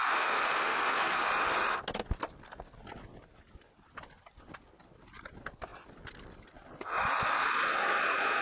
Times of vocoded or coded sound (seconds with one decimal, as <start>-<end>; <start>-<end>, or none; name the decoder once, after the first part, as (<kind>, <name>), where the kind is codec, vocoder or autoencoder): none